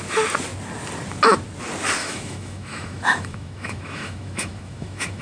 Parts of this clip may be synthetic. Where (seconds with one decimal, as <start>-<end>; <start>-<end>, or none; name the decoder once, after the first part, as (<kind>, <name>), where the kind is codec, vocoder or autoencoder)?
2.0-5.2 (autoencoder, DAC-VAE)